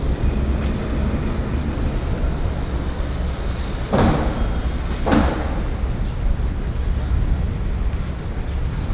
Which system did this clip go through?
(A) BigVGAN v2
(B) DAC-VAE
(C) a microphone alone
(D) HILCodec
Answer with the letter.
C